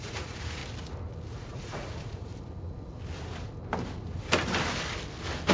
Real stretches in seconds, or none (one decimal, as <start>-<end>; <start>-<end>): 0.6-1.3; 2.3-5.5